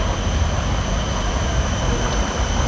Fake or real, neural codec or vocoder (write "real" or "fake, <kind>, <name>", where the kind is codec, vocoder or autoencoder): real